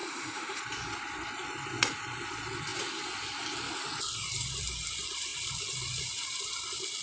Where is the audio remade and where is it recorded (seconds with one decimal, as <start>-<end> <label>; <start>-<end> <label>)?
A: 0.0-0.6 remade; 0.6-7.0 recorded